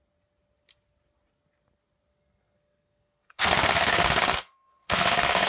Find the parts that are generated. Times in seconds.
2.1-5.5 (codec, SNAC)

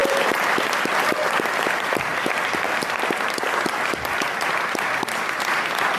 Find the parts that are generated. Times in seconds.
none

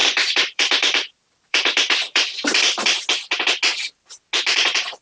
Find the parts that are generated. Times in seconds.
0.0-3.0 (vocoder, BigVGAN v2)

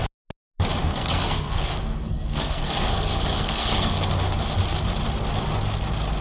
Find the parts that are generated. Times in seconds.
0.8-4.1 (codec, SNAC)